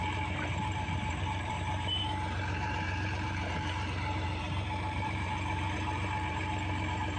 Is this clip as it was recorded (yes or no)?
no